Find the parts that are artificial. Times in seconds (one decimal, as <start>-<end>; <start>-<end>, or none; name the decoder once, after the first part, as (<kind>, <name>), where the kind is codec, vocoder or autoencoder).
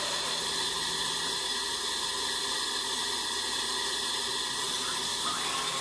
0.0-1.0 (vocoder, BigVGAN v2); 4.5-5.8